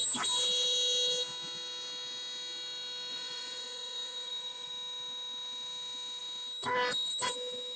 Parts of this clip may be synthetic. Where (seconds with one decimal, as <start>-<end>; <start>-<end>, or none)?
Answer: 3.1-4.7